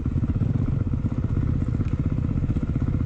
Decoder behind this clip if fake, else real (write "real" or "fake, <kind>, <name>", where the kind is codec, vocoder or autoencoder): real